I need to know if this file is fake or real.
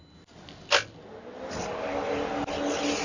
real